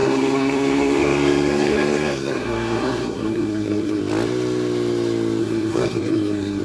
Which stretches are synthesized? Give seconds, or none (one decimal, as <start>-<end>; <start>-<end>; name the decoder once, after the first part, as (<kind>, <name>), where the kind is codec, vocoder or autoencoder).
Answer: 0.0-4.0 (codec, SNAC); 5.4-6.6